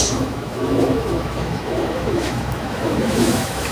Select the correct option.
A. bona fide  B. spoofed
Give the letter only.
B